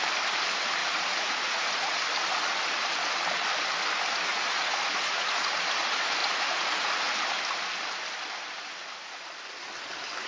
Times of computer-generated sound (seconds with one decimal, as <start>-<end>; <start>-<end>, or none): 0.8-2.0; 4.3-5.6; 6.2-6.9